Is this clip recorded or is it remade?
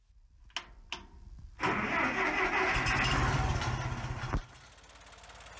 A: recorded